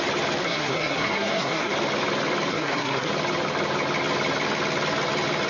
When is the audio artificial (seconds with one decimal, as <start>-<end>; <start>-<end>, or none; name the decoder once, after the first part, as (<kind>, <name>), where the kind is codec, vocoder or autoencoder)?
0.4-1.7 (codec, SNAC); 2.5-3.1